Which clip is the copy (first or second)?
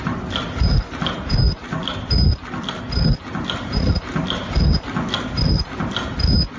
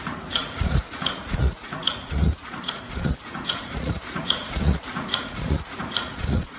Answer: second